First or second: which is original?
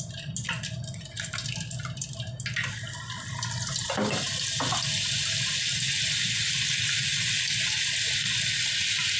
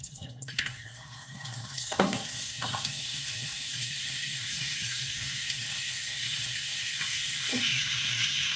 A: first